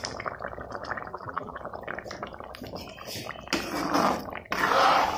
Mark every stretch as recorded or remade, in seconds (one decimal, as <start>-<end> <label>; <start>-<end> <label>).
0.0-1.1 recorded; 1.1-1.6 remade; 1.6-5.2 recorded